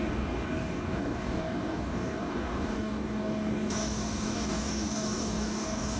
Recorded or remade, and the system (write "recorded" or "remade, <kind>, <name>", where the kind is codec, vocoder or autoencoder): remade, codec, DAC